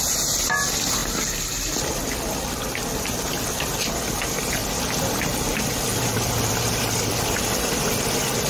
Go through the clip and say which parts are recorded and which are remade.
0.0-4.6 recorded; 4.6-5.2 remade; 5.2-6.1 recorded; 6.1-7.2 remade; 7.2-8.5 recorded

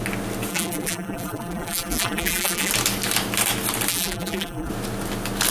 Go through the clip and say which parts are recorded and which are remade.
0.0-0.5 recorded; 0.5-2.7 remade; 2.7-3.9 recorded; 3.9-4.7 remade; 4.7-5.5 recorded

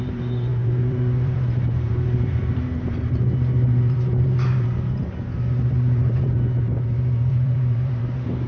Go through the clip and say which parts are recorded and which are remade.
0.0-8.5 remade

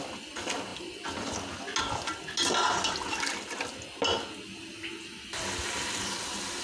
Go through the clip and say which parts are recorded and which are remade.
0.0-6.6 recorded

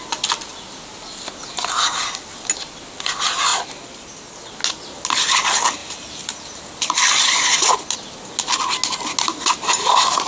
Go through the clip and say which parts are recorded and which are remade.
0.0-5.8 recorded; 5.8-6.6 remade; 6.6-10.3 recorded